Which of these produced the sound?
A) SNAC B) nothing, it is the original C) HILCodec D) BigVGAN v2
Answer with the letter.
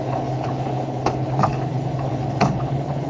C